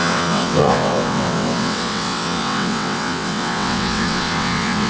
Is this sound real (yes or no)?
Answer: no